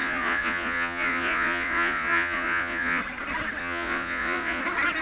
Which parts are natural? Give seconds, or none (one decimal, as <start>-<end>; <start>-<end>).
3.0-3.6; 4.6-5.0